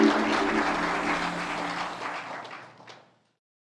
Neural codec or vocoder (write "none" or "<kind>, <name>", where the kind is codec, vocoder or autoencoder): none